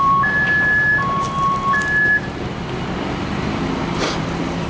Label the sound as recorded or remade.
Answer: recorded